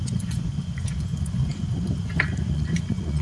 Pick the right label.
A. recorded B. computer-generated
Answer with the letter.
B